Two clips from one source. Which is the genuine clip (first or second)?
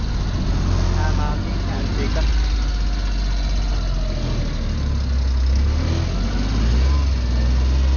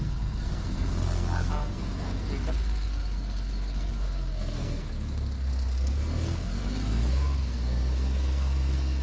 first